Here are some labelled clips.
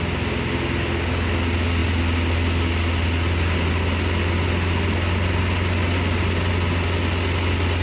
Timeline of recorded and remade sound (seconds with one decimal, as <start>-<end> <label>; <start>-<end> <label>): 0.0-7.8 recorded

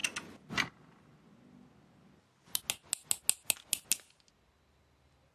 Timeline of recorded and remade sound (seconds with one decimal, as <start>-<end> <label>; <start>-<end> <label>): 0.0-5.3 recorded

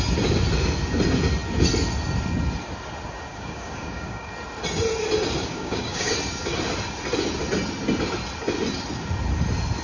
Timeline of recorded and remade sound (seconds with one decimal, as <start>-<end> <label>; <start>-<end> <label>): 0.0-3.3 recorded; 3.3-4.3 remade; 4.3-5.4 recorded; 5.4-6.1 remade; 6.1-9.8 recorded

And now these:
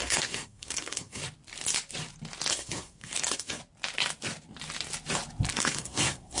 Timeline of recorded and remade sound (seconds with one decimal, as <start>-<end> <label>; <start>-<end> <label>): 0.0-1.2 remade; 1.2-2.5 recorded; 2.5-3.6 remade; 3.6-5.5 recorded; 5.5-6.4 remade